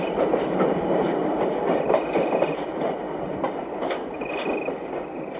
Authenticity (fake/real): real